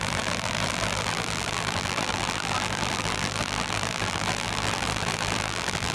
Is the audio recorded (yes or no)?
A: no